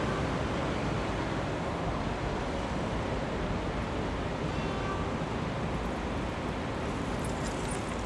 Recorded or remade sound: recorded